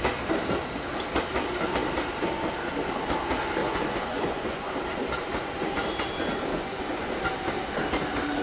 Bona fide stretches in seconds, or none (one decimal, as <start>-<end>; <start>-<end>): 0.0-3.6; 4.7-6.5; 7.1-8.4